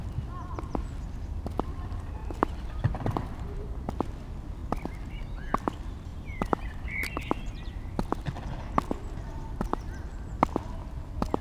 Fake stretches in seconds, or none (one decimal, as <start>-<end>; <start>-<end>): 2.2-3.9; 6.1-7.8